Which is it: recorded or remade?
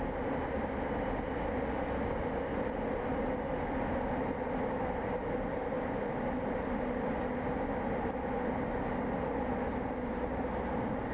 recorded